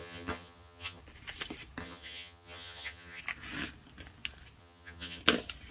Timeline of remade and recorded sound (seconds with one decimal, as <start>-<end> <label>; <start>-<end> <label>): 0.0-1.0 remade; 1.0-1.8 recorded; 1.8-3.2 remade; 3.2-4.6 recorded; 4.6-5.2 remade; 5.2-5.7 recorded

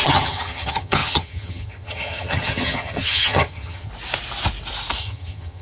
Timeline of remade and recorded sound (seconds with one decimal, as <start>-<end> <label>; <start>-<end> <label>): 0.0-3.9 remade; 3.9-5.0 recorded; 5.0-5.6 remade